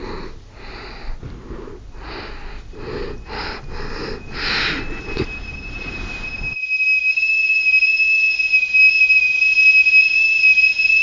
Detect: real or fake real